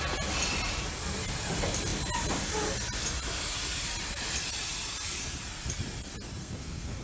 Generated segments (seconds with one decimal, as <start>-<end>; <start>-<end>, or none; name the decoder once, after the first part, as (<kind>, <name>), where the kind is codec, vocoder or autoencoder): 6.4-7.0 (codec, SNAC)